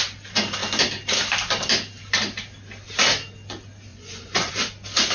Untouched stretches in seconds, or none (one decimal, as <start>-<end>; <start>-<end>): 0.0-3.9; 4.5-5.1